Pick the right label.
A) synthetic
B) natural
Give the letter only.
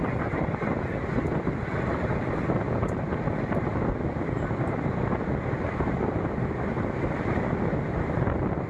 B